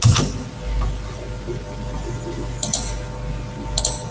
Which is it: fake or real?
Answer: real